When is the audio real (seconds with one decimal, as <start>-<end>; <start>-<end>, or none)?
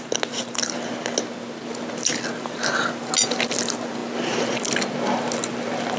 0.0-6.0